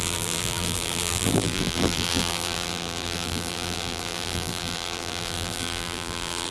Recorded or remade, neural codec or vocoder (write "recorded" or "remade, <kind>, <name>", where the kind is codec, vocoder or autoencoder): remade, vocoder, BigVGAN v2